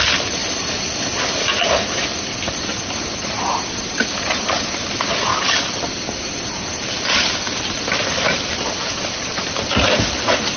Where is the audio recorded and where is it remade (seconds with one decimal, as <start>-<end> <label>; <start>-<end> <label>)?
0.0-10.6 recorded